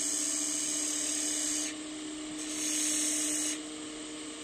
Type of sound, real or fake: real